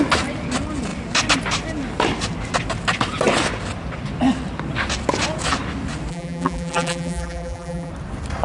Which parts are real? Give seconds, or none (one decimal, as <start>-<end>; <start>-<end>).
0.0-6.1; 7.9-8.4